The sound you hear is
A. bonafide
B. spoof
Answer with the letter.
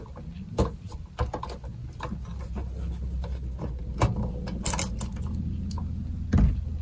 A